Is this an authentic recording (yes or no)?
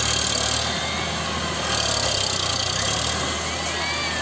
yes